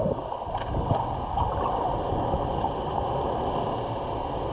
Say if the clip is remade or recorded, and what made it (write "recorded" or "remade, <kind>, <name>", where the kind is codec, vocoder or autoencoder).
recorded